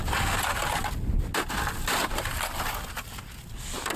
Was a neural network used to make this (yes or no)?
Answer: no